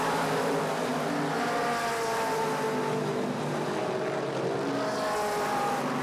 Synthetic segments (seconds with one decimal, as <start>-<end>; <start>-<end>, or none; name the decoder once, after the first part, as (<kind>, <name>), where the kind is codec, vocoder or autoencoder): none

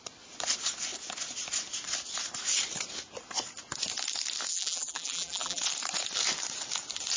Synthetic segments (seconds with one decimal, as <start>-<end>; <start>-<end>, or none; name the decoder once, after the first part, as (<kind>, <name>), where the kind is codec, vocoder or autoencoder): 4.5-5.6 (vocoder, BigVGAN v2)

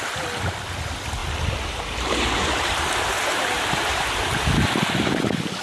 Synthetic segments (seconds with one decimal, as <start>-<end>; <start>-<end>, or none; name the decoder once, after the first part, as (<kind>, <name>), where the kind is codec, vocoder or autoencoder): 1.2-4.6 (vocoder, BigVGAN v2)

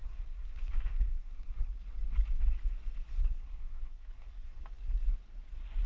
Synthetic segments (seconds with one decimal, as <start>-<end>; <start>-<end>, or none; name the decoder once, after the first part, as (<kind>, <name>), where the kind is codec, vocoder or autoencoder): 0.0-1.7 (codec, SNAC); 3.1-4.6

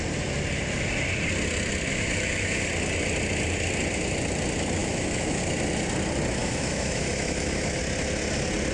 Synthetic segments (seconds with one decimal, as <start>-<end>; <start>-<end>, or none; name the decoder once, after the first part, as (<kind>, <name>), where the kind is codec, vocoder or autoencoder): 1.9-2.7 (autoencoder, DAC-VAE); 4.8-5.4; 6.4-7.8